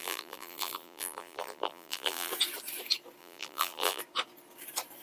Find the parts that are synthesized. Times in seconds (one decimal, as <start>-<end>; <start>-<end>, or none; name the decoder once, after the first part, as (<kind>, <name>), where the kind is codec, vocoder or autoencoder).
0.0-2.3 (vocoder, BigVGAN v2); 3.2-4.0